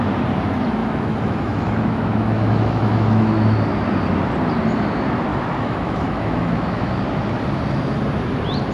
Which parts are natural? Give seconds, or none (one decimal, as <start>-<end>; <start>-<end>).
0.0-0.8; 3.3-5.3; 7.0-8.7